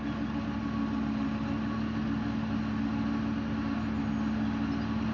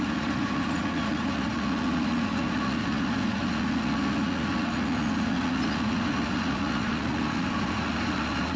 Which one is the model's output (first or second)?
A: second